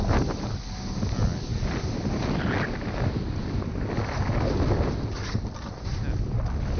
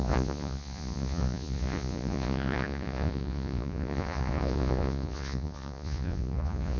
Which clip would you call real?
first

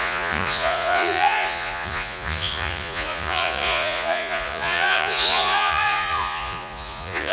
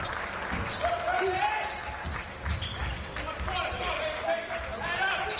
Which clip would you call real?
second